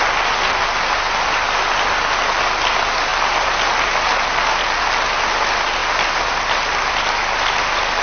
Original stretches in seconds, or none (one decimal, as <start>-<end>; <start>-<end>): 0.0-8.0